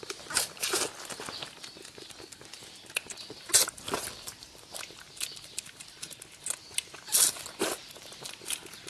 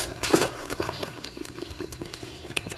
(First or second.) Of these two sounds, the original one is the first